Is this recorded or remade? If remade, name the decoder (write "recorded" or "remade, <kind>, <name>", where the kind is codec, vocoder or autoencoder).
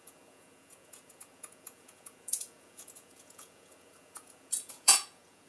remade, vocoder, Vocos